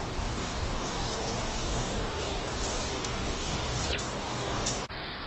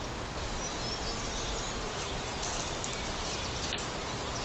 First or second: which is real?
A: second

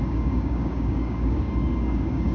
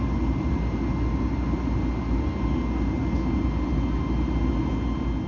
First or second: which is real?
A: second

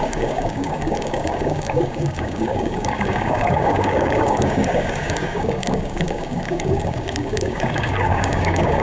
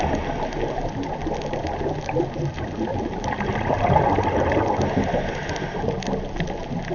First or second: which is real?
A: second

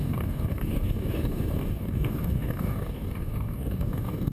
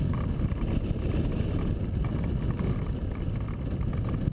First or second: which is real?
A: second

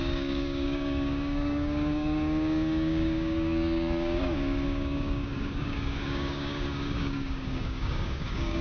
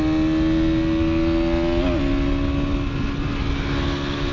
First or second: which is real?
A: second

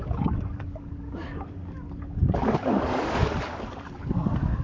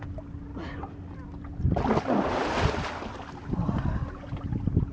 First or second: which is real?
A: second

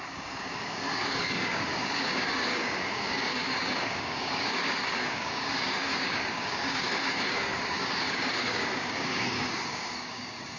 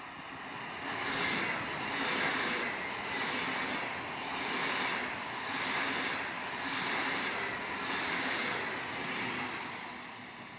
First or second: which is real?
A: second